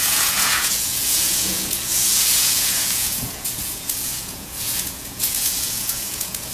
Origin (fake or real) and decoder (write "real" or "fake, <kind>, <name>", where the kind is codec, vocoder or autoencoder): fake, vocoder, Vocos